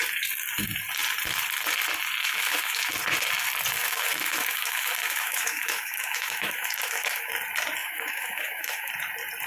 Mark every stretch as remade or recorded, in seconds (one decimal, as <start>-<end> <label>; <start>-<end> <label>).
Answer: 0.0-2.2 recorded; 2.2-2.9 remade; 2.9-3.8 recorded; 3.8-7.3 remade; 7.3-7.8 recorded; 7.8-8.9 remade; 8.9-9.5 recorded